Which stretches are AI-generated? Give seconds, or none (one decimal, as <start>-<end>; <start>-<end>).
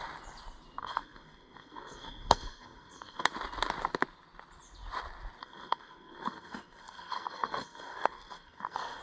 0.8-3.3; 5.4-9.0